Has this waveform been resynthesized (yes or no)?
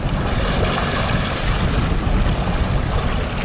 no